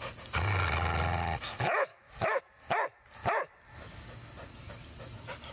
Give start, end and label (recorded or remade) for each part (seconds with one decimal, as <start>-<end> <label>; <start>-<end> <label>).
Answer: 0.0-1.9 recorded; 1.9-2.4 remade; 2.4-5.5 recorded